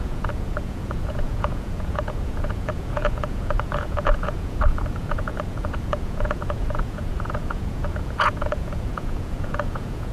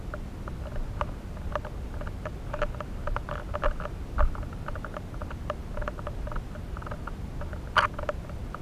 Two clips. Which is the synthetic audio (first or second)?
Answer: first